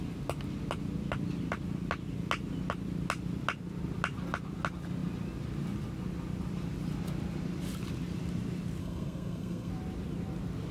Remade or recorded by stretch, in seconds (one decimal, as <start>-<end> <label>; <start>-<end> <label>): 0.0-8.8 recorded; 8.8-9.7 remade; 9.7-10.7 recorded